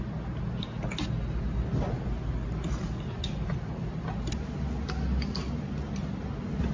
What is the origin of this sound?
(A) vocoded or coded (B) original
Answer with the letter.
B